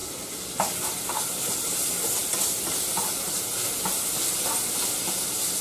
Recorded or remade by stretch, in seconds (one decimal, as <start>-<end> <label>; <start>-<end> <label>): 0.0-5.6 recorded